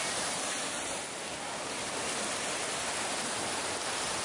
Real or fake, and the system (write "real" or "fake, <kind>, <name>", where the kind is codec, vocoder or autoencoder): real